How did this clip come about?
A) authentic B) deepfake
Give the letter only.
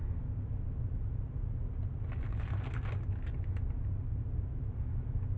A